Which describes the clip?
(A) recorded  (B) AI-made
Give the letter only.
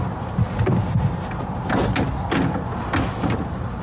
A